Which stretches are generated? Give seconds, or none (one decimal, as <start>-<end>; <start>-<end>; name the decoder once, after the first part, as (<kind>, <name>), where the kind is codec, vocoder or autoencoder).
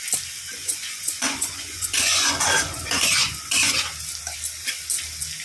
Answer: 0.6-3.8 (vocoder, Vocos)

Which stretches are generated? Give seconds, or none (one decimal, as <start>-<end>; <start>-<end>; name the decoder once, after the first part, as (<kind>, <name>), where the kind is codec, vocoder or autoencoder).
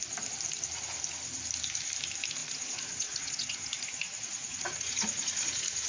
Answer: 2.4-5.9 (vocoder, Vocos)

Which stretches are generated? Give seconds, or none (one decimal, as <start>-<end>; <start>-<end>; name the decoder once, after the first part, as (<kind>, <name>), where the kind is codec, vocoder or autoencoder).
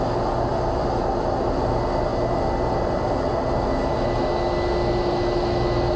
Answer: none